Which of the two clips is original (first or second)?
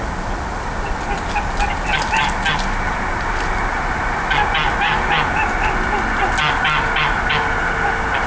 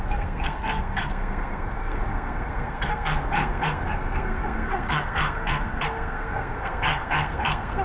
first